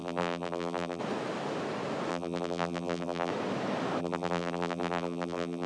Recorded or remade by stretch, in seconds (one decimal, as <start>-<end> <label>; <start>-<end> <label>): 0.0-1.0 remade; 1.0-2.1 recorded; 2.1-3.3 remade; 3.3-4.0 recorded; 4.0-5.7 remade